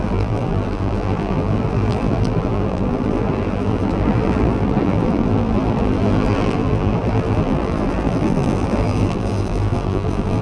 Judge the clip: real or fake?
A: fake